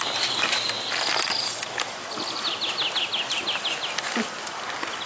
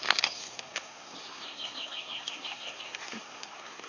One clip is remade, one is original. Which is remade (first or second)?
second